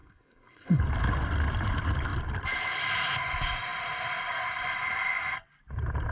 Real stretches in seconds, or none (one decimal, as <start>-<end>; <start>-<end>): 0.8-6.1